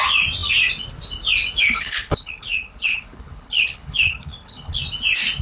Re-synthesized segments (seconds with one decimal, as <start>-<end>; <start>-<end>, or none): 1.6-4.8